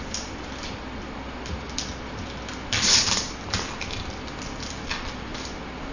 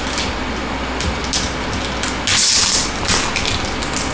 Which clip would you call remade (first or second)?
first